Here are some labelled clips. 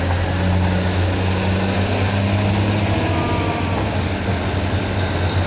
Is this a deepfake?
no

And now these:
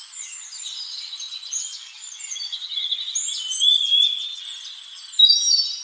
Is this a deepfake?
no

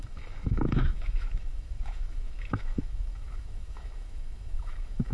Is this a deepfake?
yes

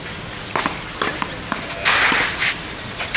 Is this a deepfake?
no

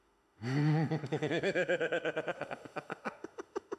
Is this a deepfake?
yes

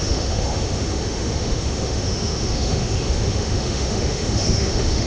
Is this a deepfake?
yes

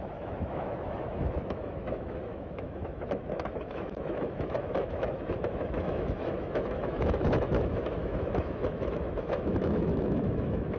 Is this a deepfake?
yes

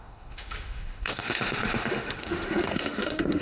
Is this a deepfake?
yes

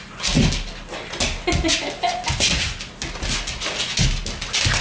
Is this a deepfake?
no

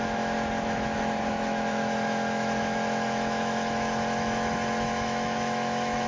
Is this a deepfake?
yes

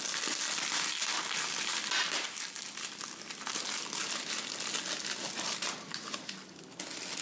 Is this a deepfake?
no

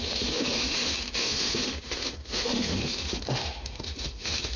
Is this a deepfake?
yes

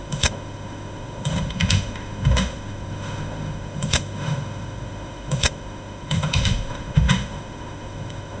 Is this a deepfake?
yes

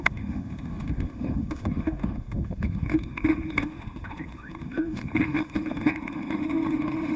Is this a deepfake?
yes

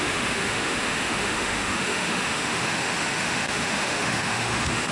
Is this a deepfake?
yes